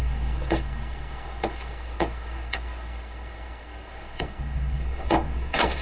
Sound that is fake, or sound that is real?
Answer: fake